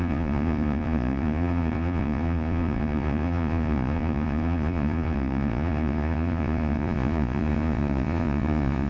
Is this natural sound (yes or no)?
no